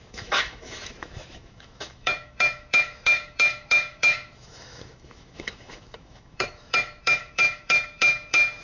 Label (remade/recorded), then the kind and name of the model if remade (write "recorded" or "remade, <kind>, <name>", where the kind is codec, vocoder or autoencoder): remade, autoencoder, DAC-VAE